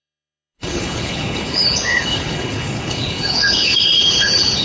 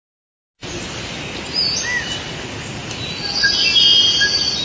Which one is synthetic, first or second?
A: first